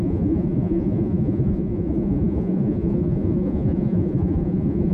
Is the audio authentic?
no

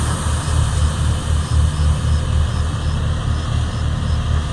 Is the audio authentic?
yes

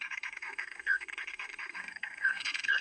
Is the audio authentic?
no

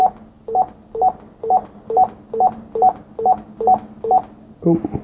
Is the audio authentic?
yes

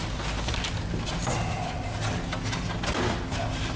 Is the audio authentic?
yes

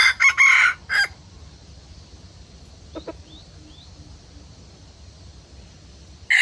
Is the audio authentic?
yes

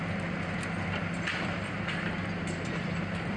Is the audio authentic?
yes